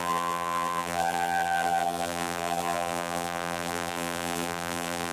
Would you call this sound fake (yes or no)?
yes